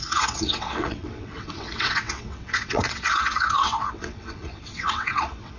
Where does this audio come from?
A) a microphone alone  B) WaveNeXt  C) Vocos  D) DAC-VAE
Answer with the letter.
B